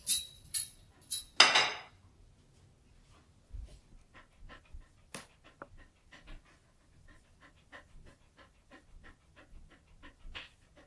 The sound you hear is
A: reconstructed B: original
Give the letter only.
B